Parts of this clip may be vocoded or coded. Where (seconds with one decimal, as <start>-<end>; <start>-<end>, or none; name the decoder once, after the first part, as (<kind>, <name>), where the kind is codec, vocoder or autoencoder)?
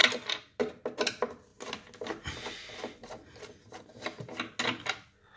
0.0-0.6 (vocoder, BigVGAN v2)